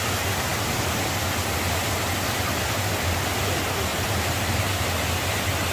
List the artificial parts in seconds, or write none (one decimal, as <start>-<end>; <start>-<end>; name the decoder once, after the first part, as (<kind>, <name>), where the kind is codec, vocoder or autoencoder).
3.9-4.8 (vocoder, BigVGAN v2)